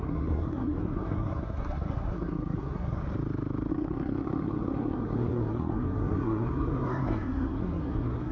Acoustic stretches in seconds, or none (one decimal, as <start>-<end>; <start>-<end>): 3.0-3.7